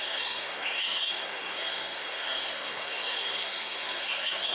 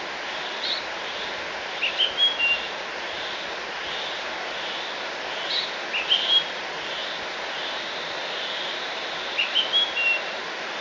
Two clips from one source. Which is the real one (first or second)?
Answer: second